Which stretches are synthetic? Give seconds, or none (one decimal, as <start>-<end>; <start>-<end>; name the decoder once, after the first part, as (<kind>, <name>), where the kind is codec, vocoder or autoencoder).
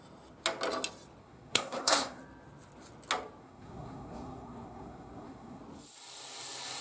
1.2-2.2 (codec, SNAC); 3.4-5.6